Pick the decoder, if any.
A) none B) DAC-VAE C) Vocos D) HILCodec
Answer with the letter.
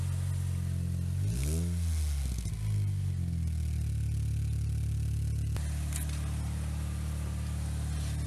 A